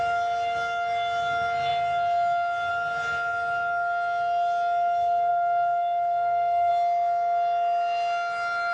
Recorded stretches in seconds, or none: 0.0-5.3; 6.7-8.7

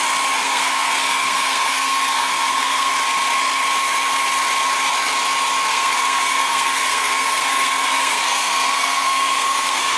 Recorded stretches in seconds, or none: 0.0-0.4; 2.9-5.7